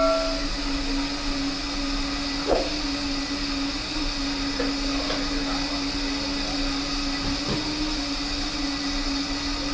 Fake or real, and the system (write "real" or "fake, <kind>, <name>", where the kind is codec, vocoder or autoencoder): real